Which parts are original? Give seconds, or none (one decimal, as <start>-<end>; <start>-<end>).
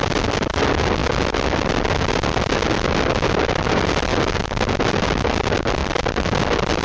0.0-6.8